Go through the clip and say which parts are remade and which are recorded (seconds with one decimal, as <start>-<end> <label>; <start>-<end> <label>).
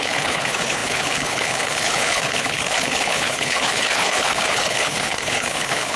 0.0-6.0 remade